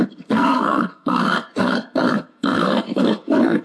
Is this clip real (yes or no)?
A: no